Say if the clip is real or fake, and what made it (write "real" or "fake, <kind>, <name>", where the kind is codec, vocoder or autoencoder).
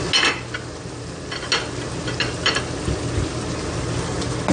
real